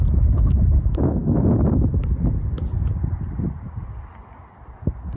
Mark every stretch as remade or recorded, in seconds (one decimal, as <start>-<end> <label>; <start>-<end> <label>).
0.0-5.2 recorded